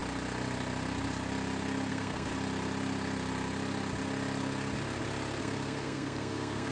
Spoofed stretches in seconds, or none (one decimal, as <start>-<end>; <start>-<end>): 1.9-2.3; 5.4-6.7